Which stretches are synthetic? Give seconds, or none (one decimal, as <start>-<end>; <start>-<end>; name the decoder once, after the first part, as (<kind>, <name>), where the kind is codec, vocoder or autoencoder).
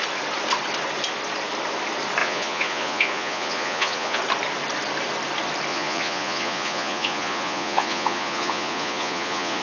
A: 2.2-4.2 (vocoder, Vocos); 5.7-9.6